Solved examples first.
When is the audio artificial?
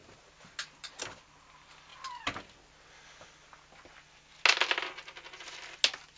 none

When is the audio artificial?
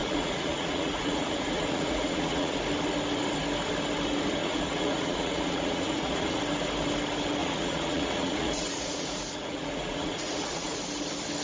0.0-2.6; 4.4-6.4; 7.4-10.8